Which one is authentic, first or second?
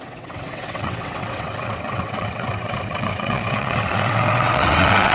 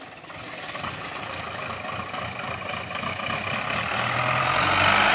second